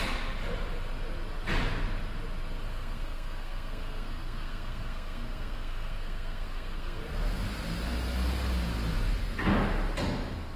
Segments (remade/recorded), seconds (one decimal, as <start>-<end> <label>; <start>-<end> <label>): 0.0-2.7 recorded; 2.7-7.0 remade; 7.0-10.6 recorded